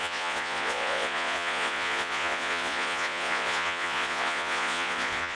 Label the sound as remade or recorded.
remade